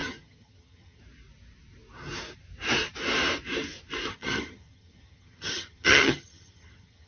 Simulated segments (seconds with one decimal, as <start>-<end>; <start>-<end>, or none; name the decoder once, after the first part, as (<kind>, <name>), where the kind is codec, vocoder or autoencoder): 0.0-1.0 (vocoder, HiFi-GAN); 4.1-7.1